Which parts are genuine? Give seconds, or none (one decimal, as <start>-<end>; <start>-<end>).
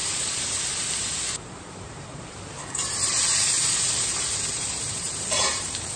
none